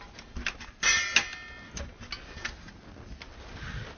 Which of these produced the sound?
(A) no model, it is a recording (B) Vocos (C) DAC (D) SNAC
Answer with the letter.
A